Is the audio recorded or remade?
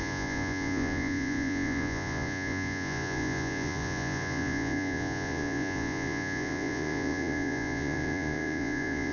remade